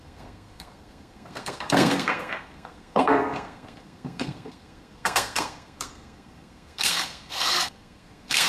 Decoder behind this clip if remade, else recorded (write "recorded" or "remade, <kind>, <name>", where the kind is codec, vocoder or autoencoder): remade, codec, SNAC